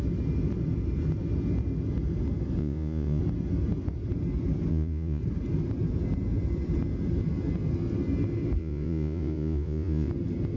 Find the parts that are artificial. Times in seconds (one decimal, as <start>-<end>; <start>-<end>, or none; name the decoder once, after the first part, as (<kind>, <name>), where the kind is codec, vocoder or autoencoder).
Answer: 2.6-3.2 (vocoder, Vocos); 4.7-5.2; 8.6-10.1

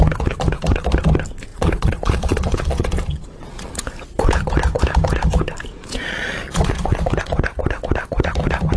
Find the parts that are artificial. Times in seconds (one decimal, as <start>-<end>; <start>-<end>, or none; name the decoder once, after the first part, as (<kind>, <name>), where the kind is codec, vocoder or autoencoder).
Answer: 1.5-3.7 (vocoder, Vocos); 5.7-7.0